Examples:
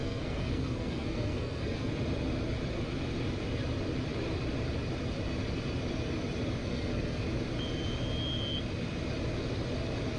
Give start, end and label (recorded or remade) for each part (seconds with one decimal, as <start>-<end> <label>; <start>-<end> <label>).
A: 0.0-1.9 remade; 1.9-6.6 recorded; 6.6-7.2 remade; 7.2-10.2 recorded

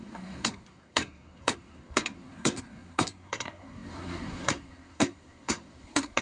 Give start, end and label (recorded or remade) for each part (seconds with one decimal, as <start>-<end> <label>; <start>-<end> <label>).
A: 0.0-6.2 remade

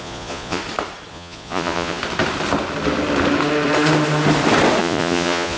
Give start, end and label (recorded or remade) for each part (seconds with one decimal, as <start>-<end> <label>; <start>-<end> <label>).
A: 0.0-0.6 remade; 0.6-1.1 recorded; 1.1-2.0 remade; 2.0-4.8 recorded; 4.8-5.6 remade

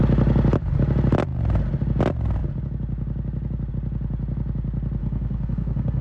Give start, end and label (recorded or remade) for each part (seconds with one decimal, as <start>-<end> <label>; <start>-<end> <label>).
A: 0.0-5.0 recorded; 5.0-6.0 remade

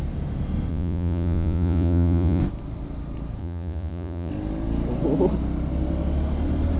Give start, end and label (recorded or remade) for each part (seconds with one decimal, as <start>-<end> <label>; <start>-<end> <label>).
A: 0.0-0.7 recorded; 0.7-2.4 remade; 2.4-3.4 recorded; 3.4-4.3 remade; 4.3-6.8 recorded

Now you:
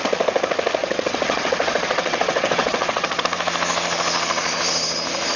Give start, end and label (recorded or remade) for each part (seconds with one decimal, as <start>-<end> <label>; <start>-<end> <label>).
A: 0.0-0.8 recorded; 0.8-3.2 remade; 3.2-5.4 recorded